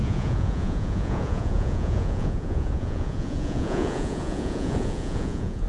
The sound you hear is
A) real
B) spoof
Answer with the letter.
B